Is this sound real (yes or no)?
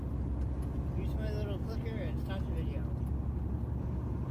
yes